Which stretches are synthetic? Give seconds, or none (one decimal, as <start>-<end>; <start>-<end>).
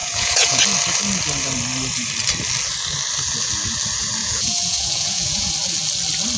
0.0-0.6; 4.2-5.5